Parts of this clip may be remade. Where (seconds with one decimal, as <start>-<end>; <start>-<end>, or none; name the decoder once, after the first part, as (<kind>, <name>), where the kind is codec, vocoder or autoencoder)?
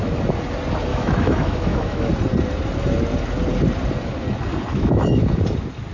0.9-2.1 (autoencoder, DAC-VAE); 4.7-5.2